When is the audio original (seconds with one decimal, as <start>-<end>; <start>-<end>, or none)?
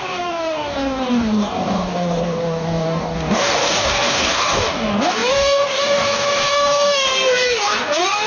none